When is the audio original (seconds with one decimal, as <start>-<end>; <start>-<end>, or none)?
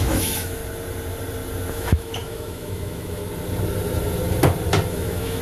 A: 0.6-1.7; 3.2-4.9